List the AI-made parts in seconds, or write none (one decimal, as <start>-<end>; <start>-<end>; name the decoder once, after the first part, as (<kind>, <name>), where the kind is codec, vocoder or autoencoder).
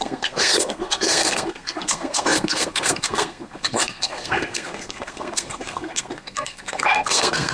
0.0-7.5 (codec, SNAC)